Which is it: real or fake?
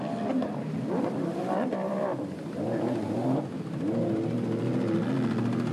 real